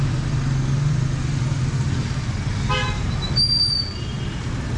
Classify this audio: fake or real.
real